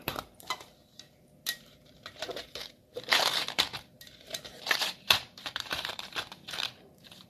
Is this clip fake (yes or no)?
yes